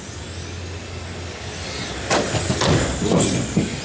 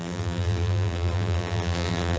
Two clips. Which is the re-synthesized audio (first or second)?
second